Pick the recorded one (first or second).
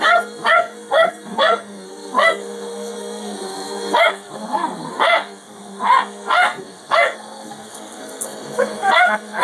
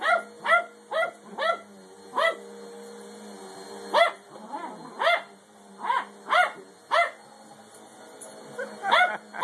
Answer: second